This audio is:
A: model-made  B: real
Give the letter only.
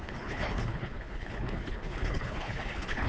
A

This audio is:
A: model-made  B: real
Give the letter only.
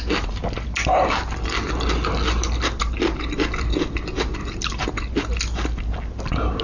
B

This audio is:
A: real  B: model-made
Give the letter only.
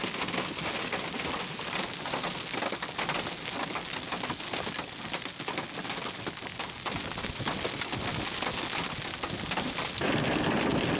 A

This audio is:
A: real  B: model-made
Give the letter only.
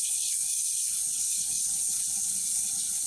B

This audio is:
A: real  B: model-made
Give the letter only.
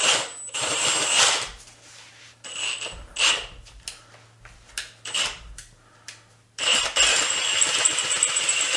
A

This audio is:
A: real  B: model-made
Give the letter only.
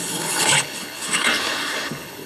B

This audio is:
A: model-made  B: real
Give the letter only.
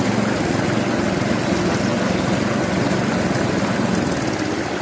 B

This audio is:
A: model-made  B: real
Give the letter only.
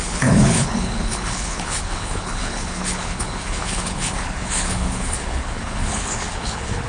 A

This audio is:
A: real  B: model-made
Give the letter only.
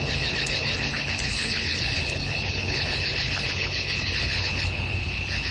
B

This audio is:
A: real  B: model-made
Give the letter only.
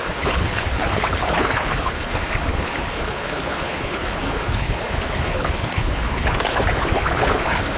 B